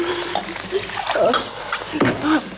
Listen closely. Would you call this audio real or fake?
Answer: real